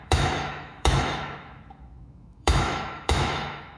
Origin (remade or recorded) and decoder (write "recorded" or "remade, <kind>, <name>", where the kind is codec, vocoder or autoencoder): remade, autoencoder, DAC-VAE